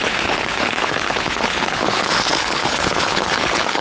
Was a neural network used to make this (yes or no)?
yes